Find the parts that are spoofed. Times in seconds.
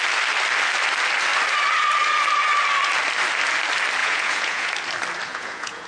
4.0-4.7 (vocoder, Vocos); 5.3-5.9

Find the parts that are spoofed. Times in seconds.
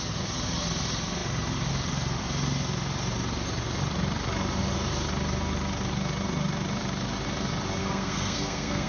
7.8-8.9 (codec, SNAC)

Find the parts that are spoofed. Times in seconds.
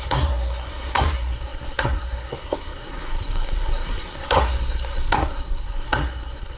0.0-6.6 (codec, SNAC)